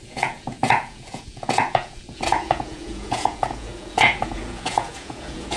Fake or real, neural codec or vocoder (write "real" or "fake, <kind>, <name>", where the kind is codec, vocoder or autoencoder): fake, vocoder, Vocos